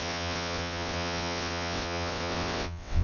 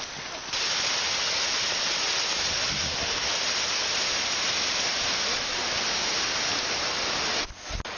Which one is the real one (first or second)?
second